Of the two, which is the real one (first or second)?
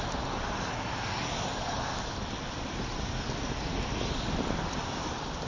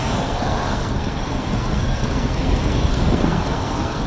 first